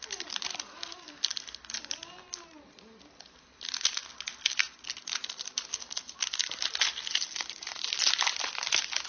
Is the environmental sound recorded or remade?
recorded